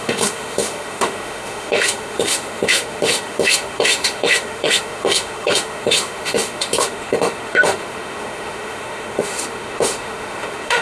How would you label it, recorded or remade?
remade